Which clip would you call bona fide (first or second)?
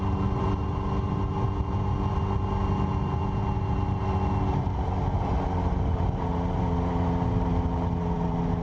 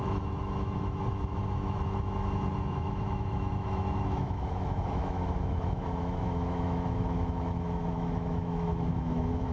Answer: first